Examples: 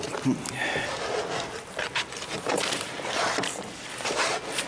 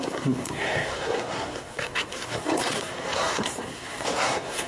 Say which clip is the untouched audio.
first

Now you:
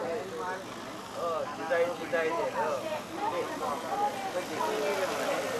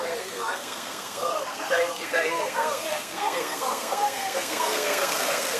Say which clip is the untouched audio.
first